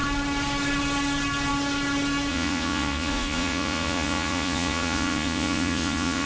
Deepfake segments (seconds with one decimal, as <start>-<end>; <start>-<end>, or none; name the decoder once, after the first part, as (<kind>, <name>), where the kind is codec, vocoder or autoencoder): 2.3-6.3 (vocoder, Vocos)